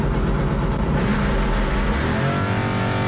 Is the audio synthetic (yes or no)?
no